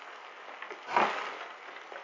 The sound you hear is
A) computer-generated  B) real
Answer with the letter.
B